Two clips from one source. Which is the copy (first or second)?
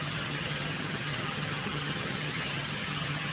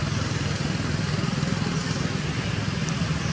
first